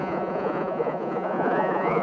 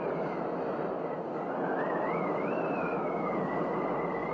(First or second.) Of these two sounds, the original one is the second